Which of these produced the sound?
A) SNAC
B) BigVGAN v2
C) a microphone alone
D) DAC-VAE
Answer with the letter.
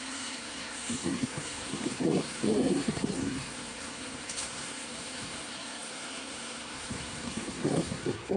A